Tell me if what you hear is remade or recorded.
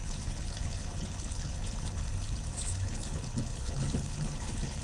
remade